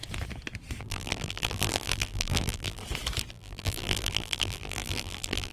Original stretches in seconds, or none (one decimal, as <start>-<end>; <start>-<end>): 0.0-0.8; 2.8-3.3